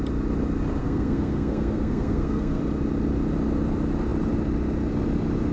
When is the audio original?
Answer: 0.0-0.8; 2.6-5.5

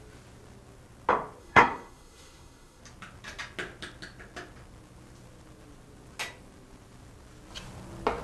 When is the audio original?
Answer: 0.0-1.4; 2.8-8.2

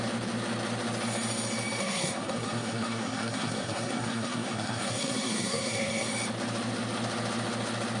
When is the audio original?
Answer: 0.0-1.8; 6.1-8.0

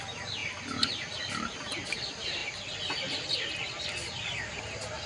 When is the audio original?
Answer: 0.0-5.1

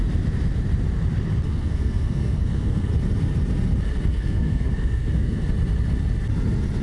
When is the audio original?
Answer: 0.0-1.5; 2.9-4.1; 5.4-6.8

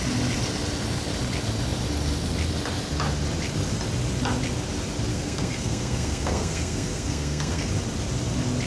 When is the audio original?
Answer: 0.0-5.1; 7.7-8.7

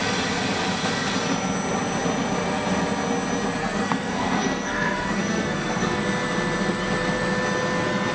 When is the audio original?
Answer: 0.0-3.6; 6.0-8.1

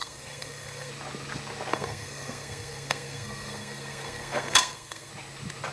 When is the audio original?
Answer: 0.9-1.7; 5.1-5.7